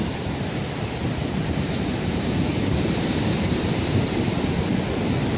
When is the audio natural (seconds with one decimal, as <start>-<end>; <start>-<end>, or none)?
0.0-1.2; 4.4-5.4